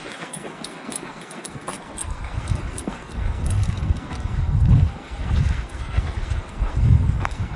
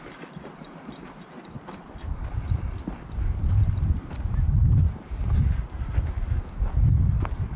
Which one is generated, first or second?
first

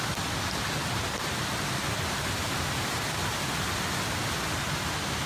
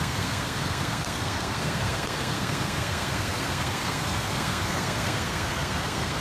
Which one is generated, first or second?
second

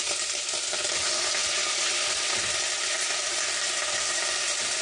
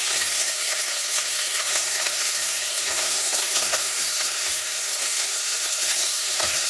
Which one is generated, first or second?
second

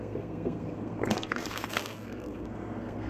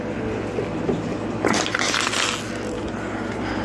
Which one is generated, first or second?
first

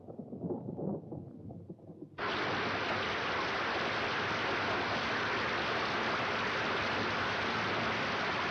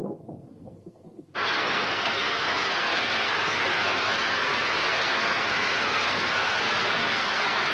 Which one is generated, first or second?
second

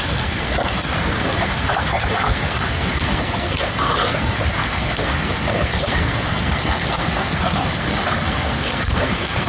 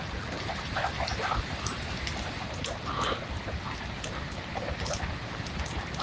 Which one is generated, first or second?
first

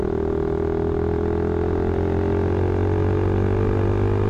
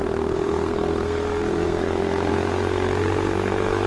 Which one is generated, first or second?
second